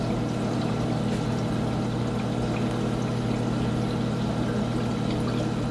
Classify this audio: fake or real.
real